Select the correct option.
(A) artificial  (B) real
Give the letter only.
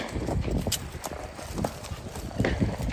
B